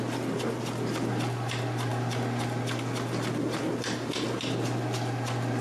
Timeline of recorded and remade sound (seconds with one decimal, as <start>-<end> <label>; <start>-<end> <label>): 0.0-5.6 recorded